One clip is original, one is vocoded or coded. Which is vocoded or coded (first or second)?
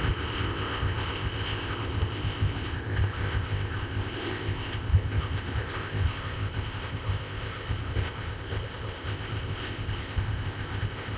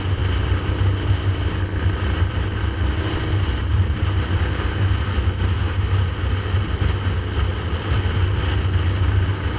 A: first